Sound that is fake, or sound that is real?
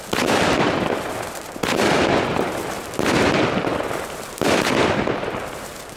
fake